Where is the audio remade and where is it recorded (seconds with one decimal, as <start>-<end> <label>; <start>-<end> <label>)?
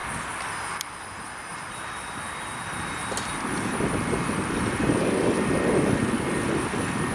0.0-1.5 recorded; 1.5-3.3 remade; 3.3-6.0 recorded; 6.0-7.1 remade